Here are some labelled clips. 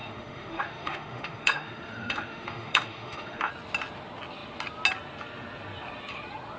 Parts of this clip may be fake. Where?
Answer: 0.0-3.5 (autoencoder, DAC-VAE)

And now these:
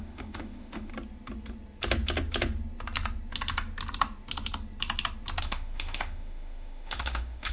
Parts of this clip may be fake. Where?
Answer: 0.0-0.9 (autoencoder, DAC-VAE); 5.4-7.5

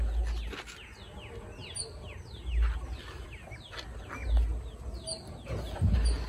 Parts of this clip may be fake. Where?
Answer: none

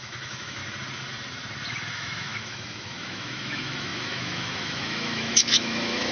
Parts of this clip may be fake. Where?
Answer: 0.0-0.6 (autoencoder, DAC-VAE); 1.9-6.1

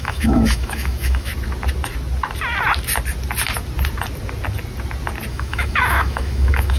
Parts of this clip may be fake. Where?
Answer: 0.0-1.3 (autoencoder, DAC-VAE); 5.3-6.8

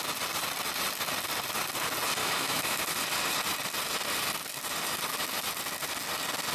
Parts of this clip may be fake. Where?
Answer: 2.2-2.8 (autoencoder, DAC-VAE)

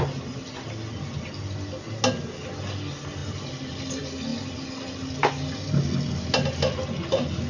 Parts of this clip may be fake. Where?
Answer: none